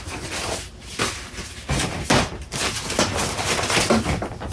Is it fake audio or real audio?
real